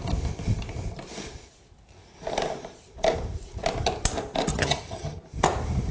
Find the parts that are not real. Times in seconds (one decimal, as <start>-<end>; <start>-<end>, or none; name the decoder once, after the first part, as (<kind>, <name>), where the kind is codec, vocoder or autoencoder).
4.5-5.2 (vocoder, HiFi-GAN)